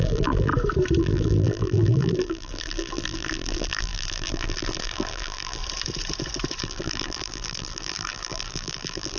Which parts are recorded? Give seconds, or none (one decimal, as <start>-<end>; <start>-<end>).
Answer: 0.5-1.0; 5.6-6.6